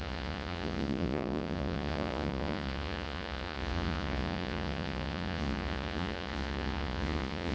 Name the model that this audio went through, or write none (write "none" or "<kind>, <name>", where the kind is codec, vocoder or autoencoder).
vocoder, Vocos